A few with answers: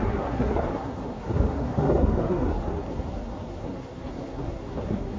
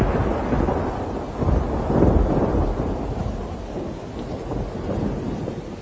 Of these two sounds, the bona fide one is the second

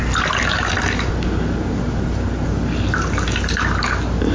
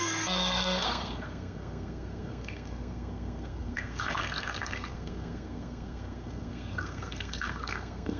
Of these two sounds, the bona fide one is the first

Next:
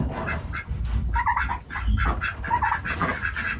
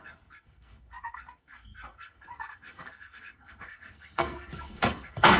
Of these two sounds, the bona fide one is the first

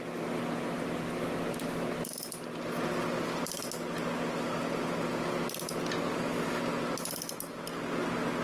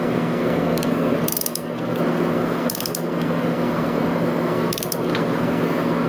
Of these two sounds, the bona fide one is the first